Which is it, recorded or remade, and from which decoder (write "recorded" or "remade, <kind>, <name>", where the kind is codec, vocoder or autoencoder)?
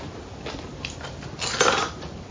recorded